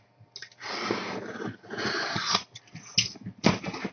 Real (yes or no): yes